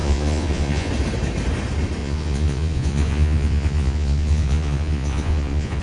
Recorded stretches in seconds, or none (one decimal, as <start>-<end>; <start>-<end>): 0.9-2.0